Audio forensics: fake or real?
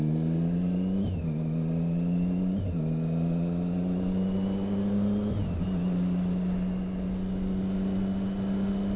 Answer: real